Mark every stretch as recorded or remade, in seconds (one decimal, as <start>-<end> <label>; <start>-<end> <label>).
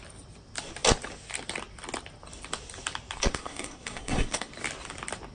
0.0-3.3 recorded; 3.3-4.5 remade; 4.5-5.3 recorded